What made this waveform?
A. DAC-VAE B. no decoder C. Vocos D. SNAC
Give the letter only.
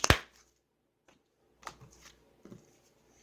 B